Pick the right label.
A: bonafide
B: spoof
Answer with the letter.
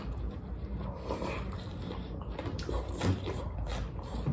A